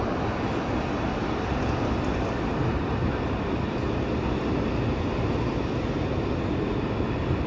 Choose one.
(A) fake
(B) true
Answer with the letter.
B